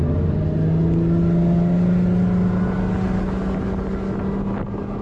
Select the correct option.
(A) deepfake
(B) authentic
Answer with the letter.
B